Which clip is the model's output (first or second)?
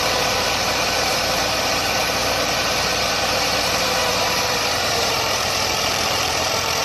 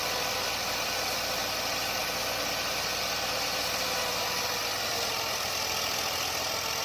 first